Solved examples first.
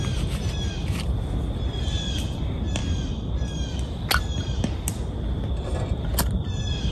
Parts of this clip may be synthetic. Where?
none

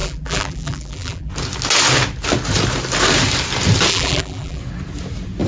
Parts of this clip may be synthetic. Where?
0.0-1.3 (vocoder, BigVGAN v2); 3.9-4.6

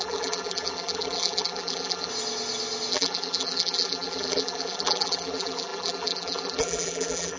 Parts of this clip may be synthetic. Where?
0.0-2.1 (vocoder, BigVGAN v2); 2.9-7.4

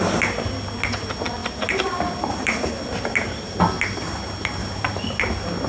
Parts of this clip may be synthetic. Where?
1.4-3.6 (vocoder, BigVGAN v2); 4.6-5.2

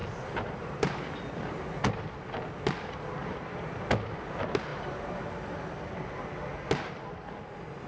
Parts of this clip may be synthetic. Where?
0.0-0.9 (vocoder, BigVGAN v2); 4.7-5.2

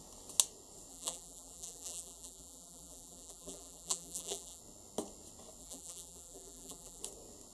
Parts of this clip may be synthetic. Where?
0.9-4.6 (vocoder, BigVGAN v2); 5.6-7.0

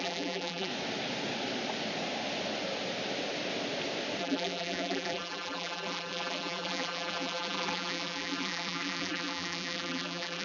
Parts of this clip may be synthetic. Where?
0.0-0.7 (vocoder, BigVGAN v2); 4.2-10.4

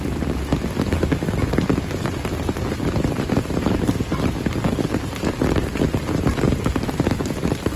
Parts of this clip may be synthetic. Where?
0.0-0.5 (vocoder, BigVGAN v2); 4.7-7.8